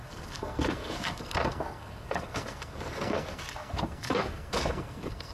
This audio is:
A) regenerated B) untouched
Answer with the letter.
A